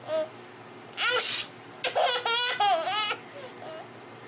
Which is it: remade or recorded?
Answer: recorded